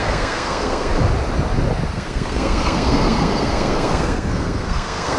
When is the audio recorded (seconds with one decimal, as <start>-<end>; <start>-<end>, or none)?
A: 0.9-1.9